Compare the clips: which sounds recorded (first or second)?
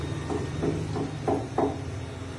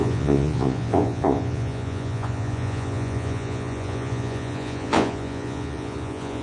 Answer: first